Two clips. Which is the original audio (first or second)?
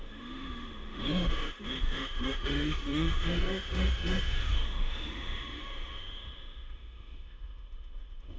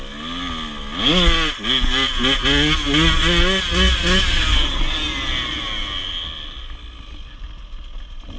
second